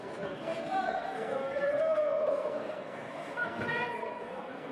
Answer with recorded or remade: remade